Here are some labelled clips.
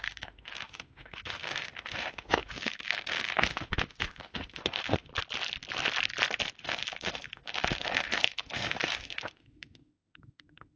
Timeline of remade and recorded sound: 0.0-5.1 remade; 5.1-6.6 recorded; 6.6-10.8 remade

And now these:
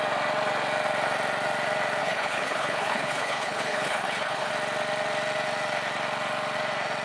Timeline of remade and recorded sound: 0.0-2.0 recorded; 2.0-4.5 remade; 4.5-7.0 recorded